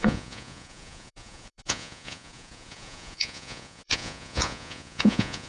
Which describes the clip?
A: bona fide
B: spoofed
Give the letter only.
B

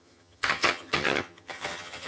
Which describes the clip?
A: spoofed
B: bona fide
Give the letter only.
A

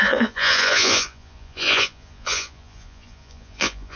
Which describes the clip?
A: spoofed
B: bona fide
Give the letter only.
A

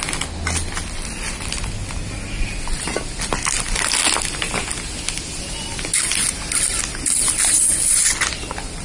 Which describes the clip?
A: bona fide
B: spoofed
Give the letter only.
A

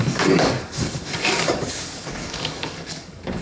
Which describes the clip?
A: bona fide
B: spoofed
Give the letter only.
B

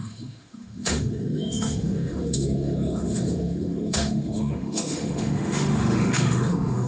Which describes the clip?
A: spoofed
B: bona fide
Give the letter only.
A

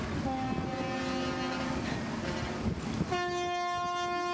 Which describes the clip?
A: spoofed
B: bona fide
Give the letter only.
B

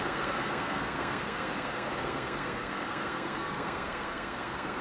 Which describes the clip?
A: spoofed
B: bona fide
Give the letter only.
A